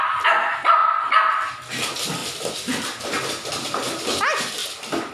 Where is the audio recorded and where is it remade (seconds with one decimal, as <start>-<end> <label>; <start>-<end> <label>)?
0.0-5.1 recorded